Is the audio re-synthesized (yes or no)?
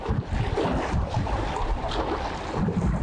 no